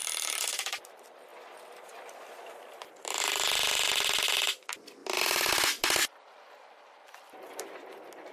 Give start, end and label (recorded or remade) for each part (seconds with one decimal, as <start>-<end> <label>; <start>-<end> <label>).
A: 0.0-8.3 recorded